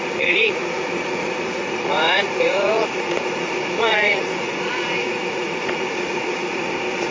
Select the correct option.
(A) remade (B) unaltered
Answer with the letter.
A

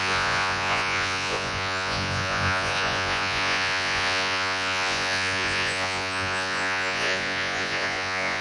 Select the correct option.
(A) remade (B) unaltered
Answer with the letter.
A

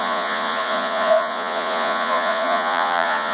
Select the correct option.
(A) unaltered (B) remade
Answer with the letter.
B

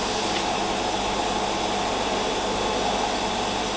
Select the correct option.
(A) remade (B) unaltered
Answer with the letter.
B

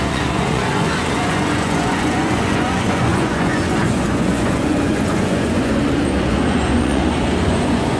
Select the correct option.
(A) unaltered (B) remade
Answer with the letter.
B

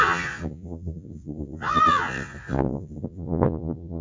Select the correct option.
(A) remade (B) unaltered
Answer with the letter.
A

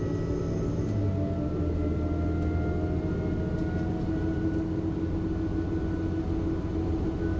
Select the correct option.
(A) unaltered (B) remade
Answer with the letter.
A